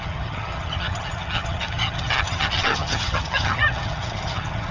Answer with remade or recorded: remade